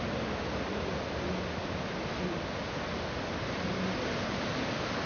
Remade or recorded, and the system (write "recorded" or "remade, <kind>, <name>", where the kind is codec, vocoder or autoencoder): recorded